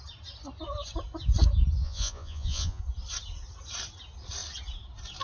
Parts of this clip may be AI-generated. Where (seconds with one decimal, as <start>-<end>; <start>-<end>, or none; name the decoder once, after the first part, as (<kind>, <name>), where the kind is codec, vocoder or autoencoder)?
1.8-2.8 (vocoder, Vocos)